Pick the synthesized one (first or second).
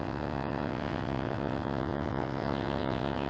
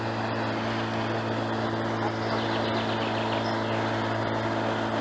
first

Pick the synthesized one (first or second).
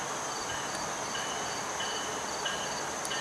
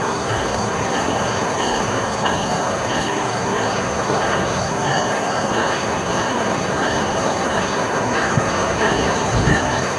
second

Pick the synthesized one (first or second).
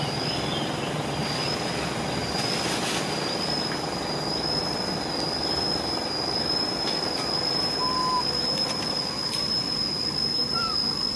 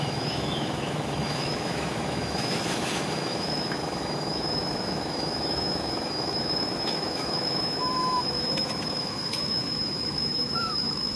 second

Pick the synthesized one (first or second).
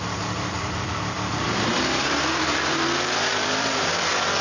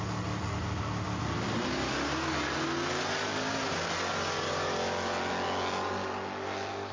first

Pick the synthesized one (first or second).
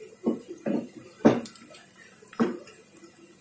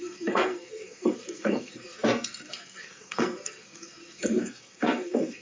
second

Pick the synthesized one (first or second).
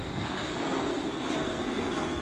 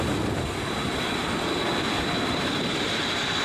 first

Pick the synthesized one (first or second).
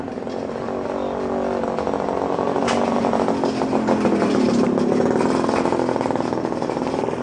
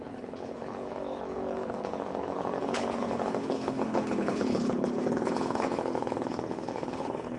second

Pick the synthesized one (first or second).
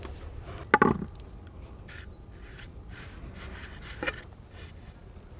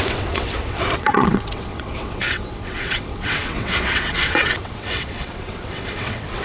second